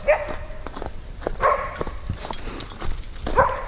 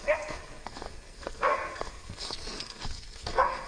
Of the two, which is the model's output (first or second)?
second